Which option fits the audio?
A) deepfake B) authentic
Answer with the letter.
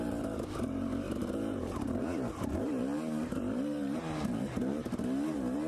A